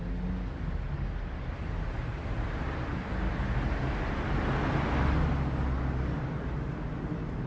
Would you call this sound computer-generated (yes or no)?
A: no